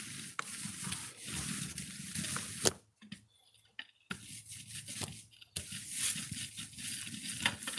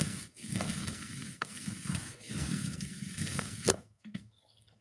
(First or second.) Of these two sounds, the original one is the first